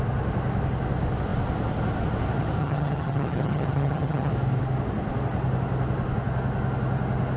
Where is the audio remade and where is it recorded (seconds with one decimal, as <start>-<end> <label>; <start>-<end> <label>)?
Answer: 0.0-2.6 recorded; 2.6-4.3 remade; 4.3-7.4 recorded